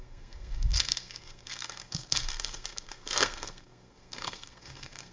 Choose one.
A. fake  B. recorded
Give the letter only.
A